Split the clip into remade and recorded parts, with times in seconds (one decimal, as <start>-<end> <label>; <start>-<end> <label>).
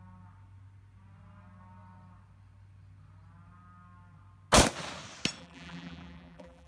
0.0-5.4 recorded; 5.4-6.7 remade